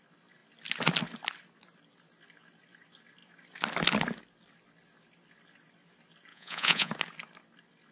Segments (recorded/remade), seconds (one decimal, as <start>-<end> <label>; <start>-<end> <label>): 0.0-6.3 recorded; 6.3-6.9 remade; 6.9-7.9 recorded